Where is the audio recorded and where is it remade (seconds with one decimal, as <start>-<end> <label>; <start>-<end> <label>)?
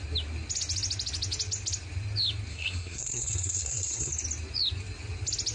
0.0-2.5 recorded; 2.5-4.1 remade; 4.1-5.5 recorded